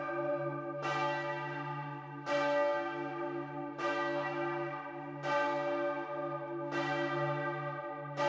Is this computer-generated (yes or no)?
no